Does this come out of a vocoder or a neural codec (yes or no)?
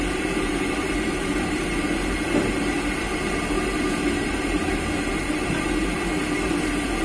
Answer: yes